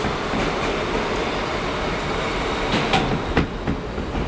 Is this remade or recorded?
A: recorded